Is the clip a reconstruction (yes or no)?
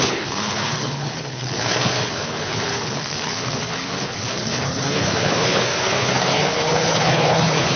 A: yes